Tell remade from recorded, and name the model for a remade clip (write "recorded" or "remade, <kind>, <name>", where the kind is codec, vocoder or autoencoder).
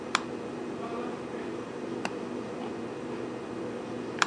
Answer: remade, vocoder, BigVGAN v2